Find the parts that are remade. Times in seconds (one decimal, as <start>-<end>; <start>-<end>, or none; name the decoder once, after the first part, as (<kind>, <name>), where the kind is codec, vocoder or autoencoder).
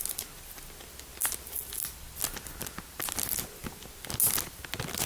none